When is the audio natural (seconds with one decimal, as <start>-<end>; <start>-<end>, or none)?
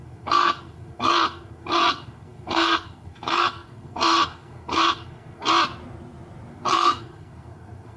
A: 5.5-6.5